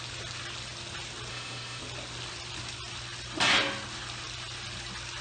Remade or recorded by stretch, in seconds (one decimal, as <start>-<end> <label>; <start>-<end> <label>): 0.0-1.3 recorded; 1.3-1.8 remade; 1.8-5.2 recorded